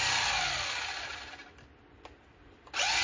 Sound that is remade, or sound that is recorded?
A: recorded